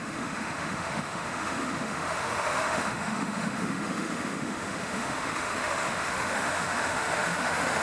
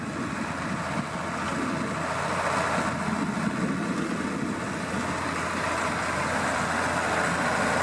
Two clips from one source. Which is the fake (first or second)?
first